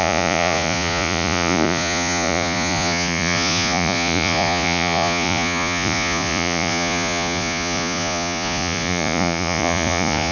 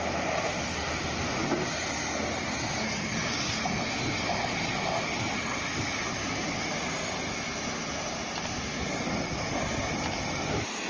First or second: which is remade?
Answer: first